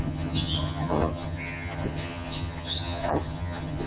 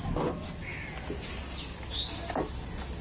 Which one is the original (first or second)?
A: second